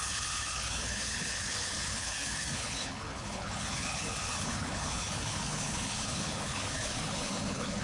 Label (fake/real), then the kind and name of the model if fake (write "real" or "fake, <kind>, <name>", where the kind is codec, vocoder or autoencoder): fake, codec, HILCodec